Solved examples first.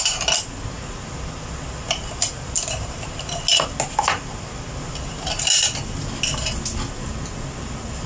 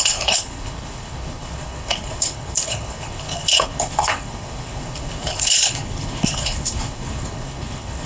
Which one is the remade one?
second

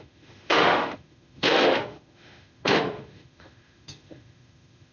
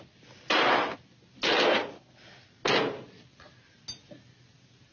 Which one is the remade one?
first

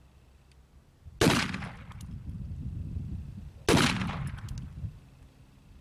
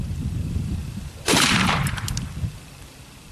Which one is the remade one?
second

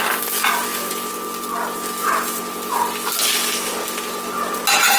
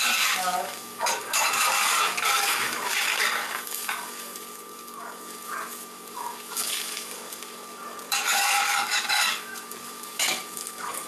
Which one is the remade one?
second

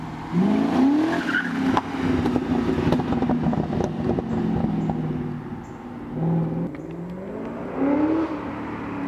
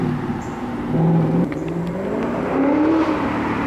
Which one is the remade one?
second